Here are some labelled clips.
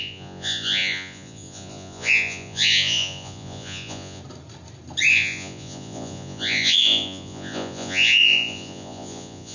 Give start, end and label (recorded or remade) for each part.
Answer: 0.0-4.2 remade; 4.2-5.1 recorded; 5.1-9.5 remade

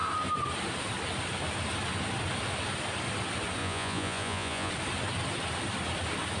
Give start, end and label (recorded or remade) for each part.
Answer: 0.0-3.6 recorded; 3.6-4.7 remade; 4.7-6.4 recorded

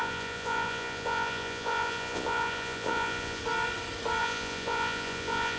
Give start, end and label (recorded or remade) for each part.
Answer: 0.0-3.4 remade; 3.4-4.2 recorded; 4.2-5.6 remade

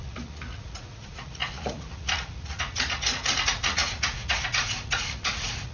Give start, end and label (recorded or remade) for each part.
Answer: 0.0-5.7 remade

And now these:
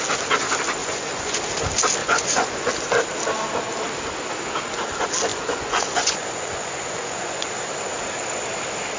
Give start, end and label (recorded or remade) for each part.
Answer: 0.0-0.8 recorded; 0.8-1.4 remade; 1.4-2.0 recorded; 2.0-2.7 remade; 2.7-5.3 recorded; 5.3-7.5 remade; 7.5-9.0 recorded